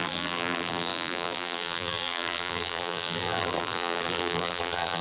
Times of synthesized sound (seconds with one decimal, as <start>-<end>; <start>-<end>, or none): 0.0-5.0

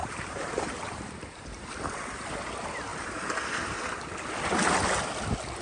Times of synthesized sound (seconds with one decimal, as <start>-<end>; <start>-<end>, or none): 0.0-1.7; 2.9-3.6